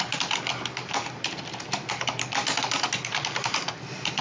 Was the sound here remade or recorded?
recorded